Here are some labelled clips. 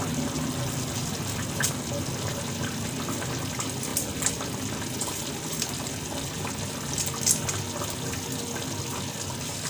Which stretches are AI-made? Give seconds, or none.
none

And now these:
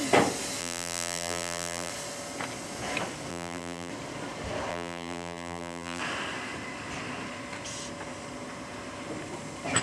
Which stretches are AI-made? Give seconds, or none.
0.6-1.9; 3.3-3.9; 4.7-6.0